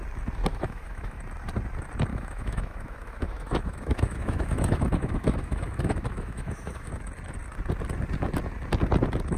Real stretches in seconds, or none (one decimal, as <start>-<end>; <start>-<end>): 0.0-0.5; 1.2-2.1; 6.9-9.4